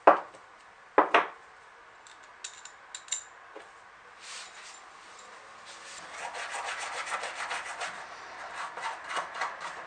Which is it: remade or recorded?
recorded